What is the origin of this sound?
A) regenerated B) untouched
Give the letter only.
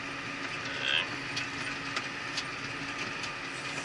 B